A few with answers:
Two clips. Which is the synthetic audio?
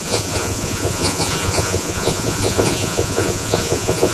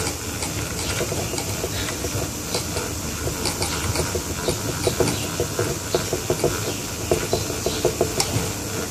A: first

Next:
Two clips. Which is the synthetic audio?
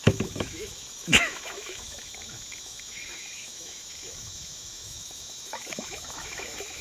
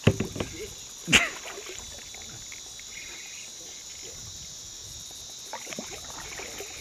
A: first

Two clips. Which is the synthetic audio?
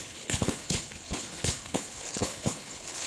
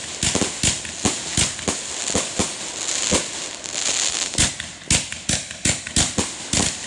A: first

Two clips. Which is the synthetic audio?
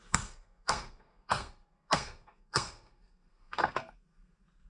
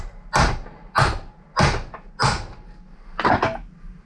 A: first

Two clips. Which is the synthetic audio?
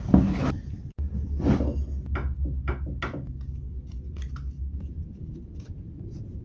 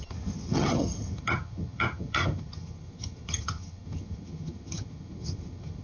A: second